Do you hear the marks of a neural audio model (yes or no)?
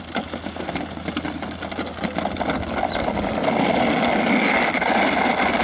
no